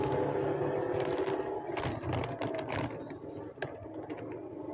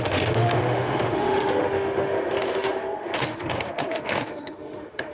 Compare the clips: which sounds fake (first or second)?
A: second